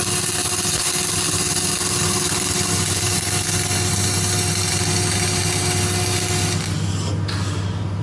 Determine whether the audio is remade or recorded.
recorded